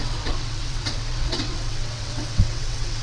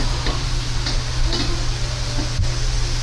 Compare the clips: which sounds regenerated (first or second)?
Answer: first